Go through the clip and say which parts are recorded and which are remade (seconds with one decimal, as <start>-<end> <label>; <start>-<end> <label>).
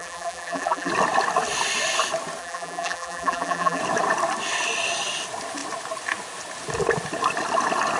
0.0-0.9 remade; 0.9-2.4 recorded; 2.4-3.8 remade; 3.8-8.0 recorded